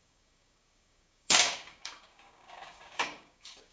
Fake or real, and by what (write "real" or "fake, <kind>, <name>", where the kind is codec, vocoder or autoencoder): fake, codec, DAC